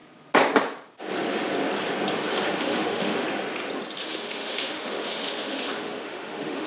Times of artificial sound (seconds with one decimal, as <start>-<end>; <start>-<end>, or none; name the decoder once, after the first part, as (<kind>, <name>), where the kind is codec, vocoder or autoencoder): 2.4-3.2 (autoencoder, DAC-VAE); 4.0-6.7